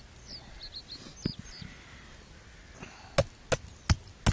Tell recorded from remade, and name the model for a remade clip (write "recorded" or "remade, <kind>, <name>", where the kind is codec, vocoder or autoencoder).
recorded